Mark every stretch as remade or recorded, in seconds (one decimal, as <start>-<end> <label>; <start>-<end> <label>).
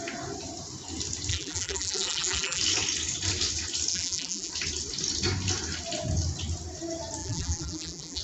0.0-1.3 recorded; 1.3-2.6 remade; 2.6-3.9 recorded; 3.9-4.5 remade; 4.5-7.2 recorded; 7.2-8.2 remade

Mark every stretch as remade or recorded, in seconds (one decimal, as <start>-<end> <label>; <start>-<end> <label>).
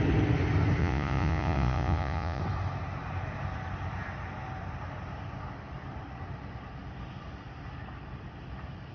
0.0-0.8 recorded; 0.8-2.4 remade; 2.4-8.9 recorded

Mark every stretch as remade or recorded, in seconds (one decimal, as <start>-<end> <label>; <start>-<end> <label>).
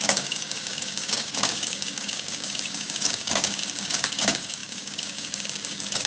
0.0-6.1 remade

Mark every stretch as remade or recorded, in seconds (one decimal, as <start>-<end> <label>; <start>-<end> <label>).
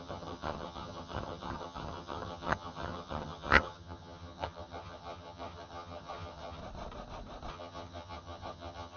0.0-6.6 remade; 6.6-7.5 recorded; 7.5-9.0 remade